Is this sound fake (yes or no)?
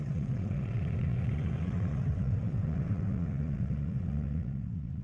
yes